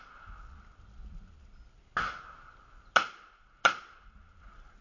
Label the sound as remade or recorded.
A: recorded